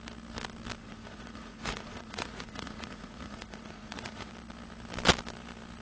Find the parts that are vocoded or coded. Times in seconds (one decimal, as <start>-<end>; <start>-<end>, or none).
0.8-4.3